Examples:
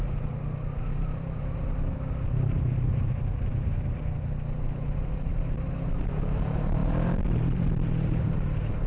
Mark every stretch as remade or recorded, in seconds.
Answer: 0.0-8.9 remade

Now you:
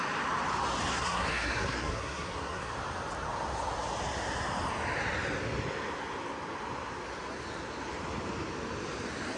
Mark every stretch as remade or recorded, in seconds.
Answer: 0.0-0.9 recorded; 0.9-2.7 remade; 2.7-9.4 recorded

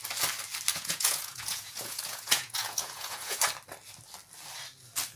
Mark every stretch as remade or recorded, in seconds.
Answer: 0.0-0.7 recorded; 0.7-3.4 remade; 3.4-5.2 recorded

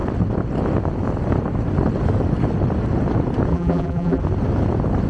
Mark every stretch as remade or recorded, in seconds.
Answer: 0.0-3.5 recorded; 3.5-4.2 remade; 4.2-5.1 recorded

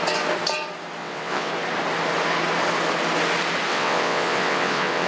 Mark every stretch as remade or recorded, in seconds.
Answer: 0.0-1.0 recorded; 1.0-1.5 remade; 1.5-3.7 recorded; 3.7-5.1 remade

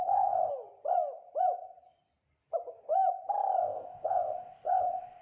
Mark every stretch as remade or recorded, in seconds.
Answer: 0.0-0.5 remade; 0.5-3.6 recorded; 3.6-5.2 remade